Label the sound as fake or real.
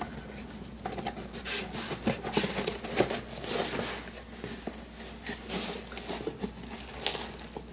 real